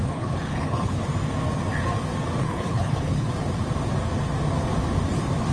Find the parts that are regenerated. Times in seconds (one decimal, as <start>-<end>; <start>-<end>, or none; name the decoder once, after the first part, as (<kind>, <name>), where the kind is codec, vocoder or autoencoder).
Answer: 0.0-1.0 (codec, HILCodec); 2.4-3.3